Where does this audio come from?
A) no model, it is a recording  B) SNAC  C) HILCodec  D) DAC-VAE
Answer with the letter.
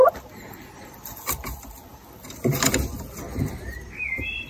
A